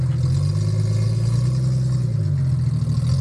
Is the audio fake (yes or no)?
no